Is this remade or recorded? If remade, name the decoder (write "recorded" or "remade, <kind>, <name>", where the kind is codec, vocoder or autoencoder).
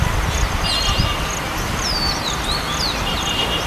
recorded